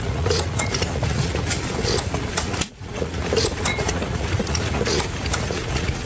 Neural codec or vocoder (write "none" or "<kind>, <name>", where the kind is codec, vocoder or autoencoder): vocoder, Vocos